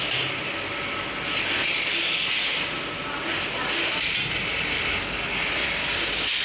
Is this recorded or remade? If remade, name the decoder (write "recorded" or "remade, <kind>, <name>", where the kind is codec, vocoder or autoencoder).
recorded